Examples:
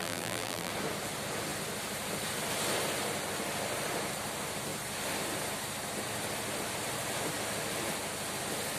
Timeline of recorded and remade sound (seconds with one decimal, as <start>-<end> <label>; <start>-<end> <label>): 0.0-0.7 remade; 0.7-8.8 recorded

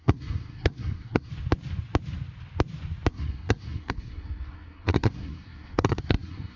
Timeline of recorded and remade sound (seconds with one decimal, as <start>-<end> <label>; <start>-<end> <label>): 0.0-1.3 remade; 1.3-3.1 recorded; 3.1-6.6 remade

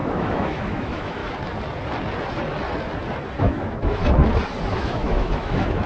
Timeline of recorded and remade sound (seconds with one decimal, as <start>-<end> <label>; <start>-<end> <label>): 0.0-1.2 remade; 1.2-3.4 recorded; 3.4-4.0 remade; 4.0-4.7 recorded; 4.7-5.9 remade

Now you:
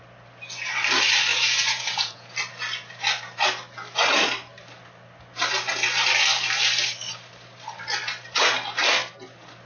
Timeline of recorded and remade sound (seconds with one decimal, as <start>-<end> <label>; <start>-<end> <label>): 0.0-1.3 recorded; 1.3-2.3 remade; 2.3-9.7 recorded

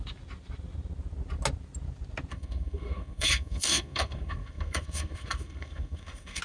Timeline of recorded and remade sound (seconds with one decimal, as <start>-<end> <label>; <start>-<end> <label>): 0.0-2.3 recorded; 2.3-6.4 remade